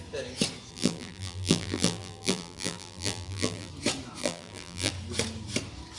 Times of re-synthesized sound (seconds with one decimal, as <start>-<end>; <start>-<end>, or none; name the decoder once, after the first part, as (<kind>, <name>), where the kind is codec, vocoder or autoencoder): 0.7-3.7 (vocoder, BigVGAN v2); 4.2-4.9